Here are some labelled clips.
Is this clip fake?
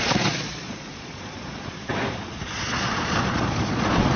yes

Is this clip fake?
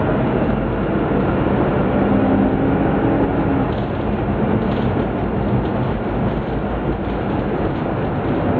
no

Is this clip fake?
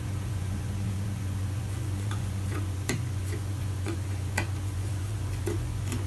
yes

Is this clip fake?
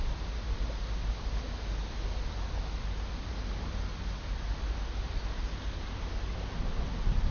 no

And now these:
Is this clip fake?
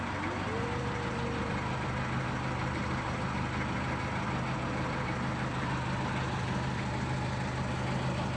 no